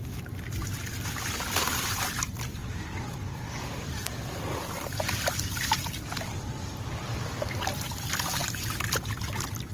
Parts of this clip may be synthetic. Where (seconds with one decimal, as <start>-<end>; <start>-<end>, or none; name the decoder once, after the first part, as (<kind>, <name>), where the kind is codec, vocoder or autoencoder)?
none